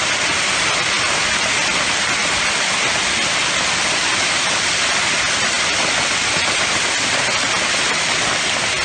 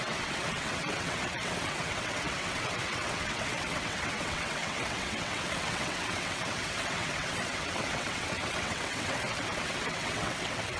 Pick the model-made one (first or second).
second